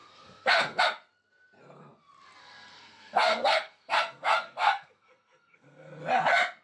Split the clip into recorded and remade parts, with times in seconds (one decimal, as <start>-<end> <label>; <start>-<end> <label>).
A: 0.0-0.8 remade; 0.8-2.4 recorded; 2.4-6.0 remade; 6.0-6.6 recorded